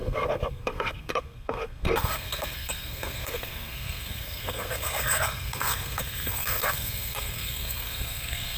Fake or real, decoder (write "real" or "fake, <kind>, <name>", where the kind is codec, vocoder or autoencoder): fake, codec, SNAC